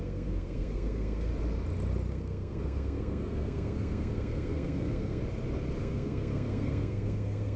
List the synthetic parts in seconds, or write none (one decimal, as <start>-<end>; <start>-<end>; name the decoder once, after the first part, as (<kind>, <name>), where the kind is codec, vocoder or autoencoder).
0.0-1.3 (codec, SNAC); 2.1-5.2; 5.8-7.6